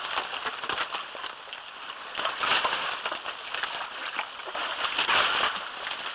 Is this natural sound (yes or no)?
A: yes